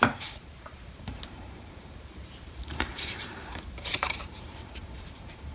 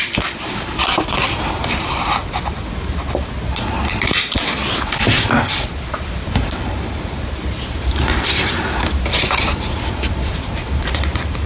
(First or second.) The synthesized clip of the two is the first